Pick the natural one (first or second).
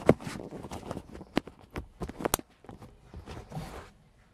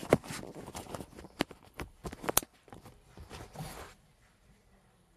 first